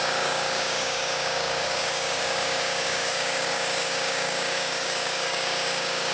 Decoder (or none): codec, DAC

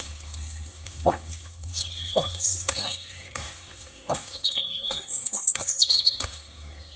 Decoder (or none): codec, SNAC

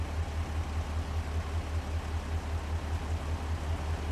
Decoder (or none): none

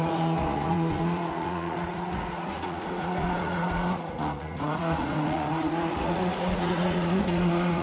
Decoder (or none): vocoder, Vocos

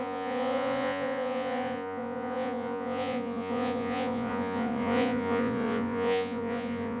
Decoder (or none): vocoder, Vocos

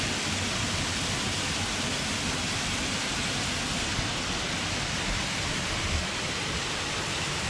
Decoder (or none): none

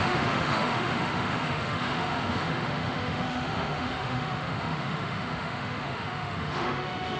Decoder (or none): autoencoder, DAC-VAE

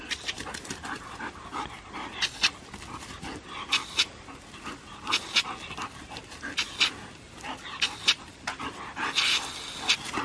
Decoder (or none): none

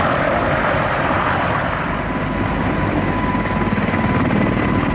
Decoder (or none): none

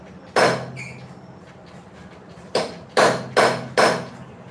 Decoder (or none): none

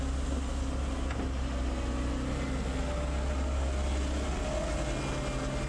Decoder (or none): none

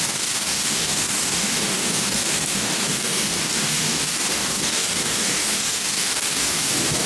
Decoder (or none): codec, DAC